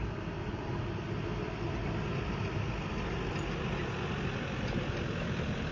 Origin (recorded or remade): recorded